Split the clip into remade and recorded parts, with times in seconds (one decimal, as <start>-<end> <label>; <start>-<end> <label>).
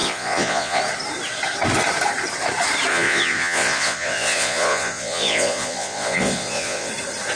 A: 0.0-0.8 remade; 0.8-2.9 recorded; 2.9-6.9 remade; 6.9-7.4 recorded